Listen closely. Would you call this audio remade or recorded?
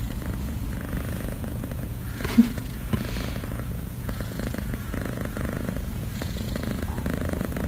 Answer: remade